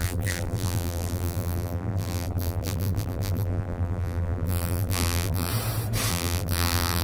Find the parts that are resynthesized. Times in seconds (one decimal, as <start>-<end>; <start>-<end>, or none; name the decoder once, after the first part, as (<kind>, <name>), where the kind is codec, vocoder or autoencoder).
0.0-5.5 (vocoder, BigVGAN v2); 6.1-7.0